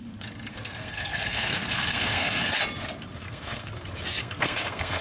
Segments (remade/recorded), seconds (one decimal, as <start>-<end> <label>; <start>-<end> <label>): 0.0-0.5 recorded; 0.5-2.6 remade; 2.6-3.2 recorded; 3.2-3.7 remade; 3.7-4.2 recorded; 4.2-5.0 remade

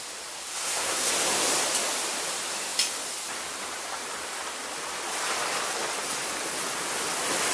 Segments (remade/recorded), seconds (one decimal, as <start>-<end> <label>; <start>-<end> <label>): 0.0-0.6 recorded; 0.6-1.1 remade; 1.1-7.5 recorded

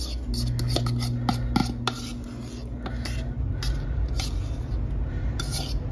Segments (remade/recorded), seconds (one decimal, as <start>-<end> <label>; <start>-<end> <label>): 0.0-5.9 recorded

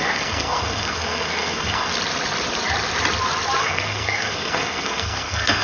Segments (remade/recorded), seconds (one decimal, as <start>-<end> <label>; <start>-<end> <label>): 0.0-1.9 remade; 1.9-3.6 recorded; 3.6-5.6 remade